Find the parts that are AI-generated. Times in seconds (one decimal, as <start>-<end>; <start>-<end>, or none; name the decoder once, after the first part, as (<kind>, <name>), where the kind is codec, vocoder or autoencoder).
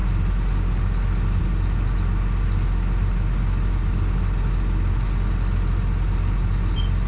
none